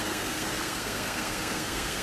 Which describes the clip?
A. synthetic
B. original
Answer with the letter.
A